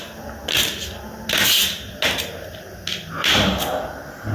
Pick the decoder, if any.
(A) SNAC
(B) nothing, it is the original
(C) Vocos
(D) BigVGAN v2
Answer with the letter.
B